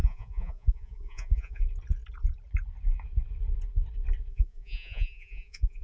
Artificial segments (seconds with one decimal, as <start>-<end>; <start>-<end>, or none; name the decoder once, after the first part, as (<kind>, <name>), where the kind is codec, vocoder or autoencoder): 0.0-1.6 (vocoder, Vocos); 4.3-5.8